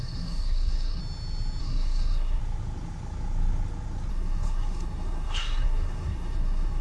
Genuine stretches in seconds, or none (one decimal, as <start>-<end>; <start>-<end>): 1.0-1.6; 2.4-4.1